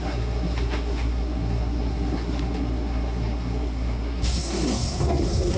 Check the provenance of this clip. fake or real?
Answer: fake